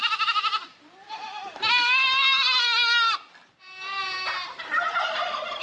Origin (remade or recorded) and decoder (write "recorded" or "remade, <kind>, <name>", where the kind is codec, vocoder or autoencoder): recorded